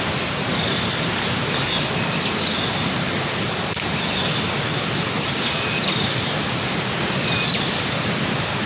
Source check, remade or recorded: recorded